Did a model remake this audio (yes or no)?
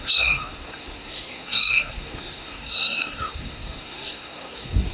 yes